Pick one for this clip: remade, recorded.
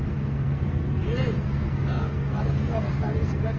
remade